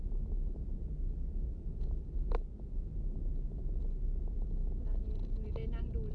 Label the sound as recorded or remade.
recorded